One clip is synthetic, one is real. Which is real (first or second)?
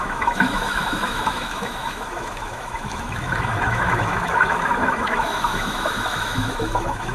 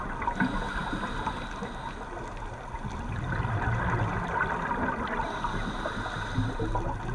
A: second